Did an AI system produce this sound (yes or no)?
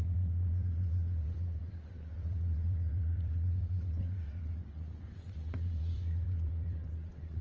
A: yes